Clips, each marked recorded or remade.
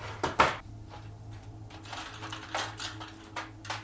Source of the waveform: recorded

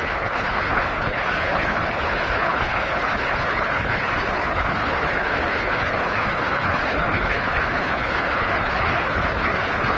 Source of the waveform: remade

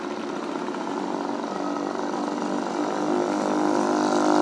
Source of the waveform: recorded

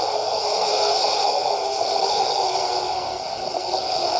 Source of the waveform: remade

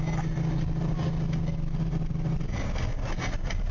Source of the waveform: recorded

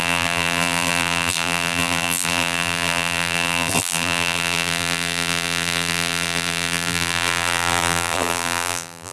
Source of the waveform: remade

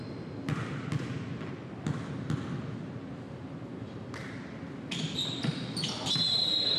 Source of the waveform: recorded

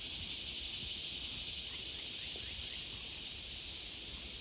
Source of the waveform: recorded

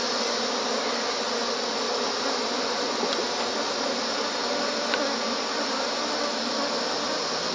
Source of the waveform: recorded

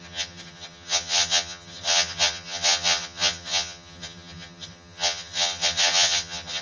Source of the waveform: remade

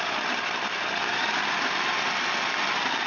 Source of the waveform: recorded